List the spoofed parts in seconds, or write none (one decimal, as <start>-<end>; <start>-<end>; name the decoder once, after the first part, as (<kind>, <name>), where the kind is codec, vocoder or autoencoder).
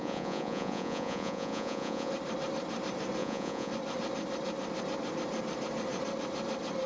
0.0-2.1 (vocoder, Vocos); 3.2-3.7